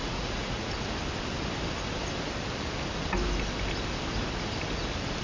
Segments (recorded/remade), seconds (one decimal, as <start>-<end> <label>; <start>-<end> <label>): 0.0-0.7 remade; 0.7-5.2 recorded